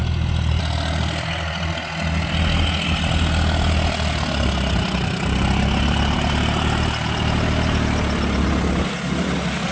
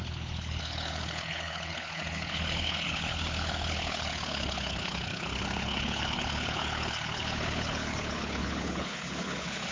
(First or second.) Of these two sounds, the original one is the first